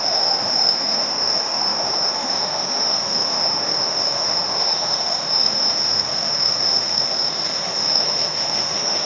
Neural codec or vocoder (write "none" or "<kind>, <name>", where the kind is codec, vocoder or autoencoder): autoencoder, DAC-VAE